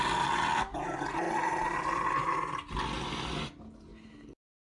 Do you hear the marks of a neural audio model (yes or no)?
no